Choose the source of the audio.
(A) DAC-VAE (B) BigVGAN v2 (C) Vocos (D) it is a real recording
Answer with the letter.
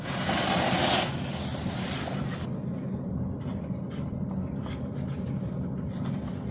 D